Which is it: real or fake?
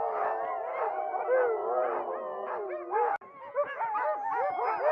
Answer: real